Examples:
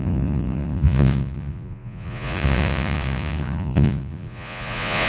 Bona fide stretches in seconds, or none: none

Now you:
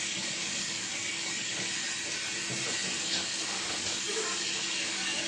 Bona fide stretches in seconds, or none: 1.8-3.0

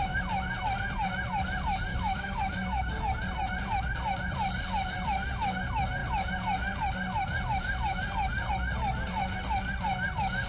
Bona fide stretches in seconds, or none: 0.0-1.9; 3.0-10.5

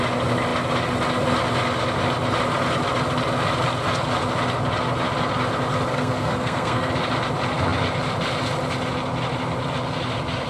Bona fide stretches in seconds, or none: 0.0-5.9; 6.9-10.5